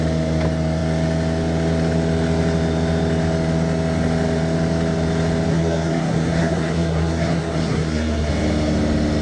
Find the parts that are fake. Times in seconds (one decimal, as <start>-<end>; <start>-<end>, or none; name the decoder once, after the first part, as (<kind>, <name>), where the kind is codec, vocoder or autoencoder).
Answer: 5.5-8.3 (codec, SNAC)